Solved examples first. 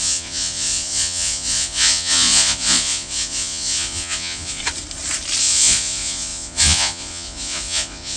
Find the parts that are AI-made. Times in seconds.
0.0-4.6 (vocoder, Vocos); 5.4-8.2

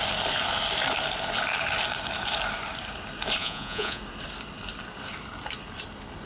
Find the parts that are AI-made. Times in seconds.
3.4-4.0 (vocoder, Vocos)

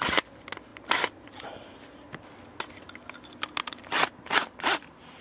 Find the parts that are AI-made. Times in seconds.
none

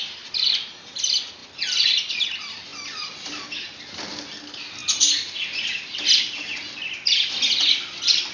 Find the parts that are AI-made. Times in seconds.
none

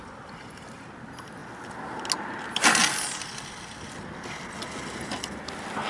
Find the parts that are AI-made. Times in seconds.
none

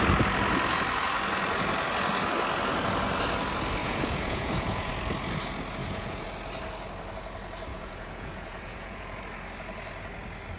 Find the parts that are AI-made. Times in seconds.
3.8-4.9 (vocoder, Vocos); 5.8-6.3; 7.7-9.2